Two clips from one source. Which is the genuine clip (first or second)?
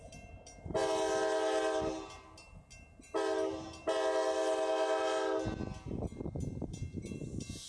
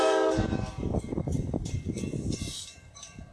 first